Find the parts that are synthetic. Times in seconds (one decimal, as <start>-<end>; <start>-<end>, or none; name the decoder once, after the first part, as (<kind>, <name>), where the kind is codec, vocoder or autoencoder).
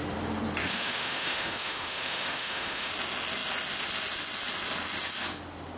0.6-2.9 (autoencoder, DAC-VAE)